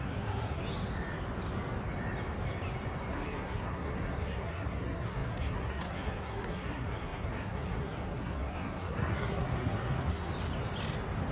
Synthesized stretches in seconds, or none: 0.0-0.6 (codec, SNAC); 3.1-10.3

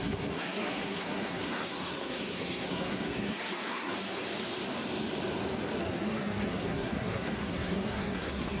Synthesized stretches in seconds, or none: 0.0-3.9 (codec, SNAC); 5.8-8.6

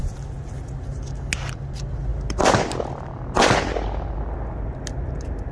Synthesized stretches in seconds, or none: none

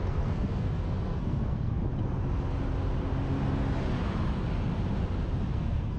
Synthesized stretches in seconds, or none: 0.0-1.9 (codec, SNAC); 5.5-6.0

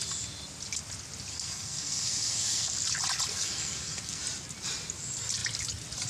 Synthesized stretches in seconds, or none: 1.3-2.7 (codec, SNAC); 3.3-4.2

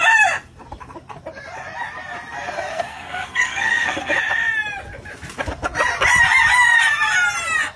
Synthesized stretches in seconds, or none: 2.7-4.2 (codec, SNAC)